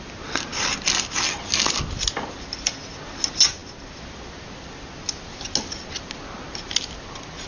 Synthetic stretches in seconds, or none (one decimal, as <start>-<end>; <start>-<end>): none